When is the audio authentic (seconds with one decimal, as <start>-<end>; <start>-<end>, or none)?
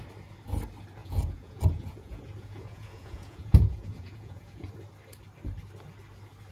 0.0-1.0; 4.7-6.5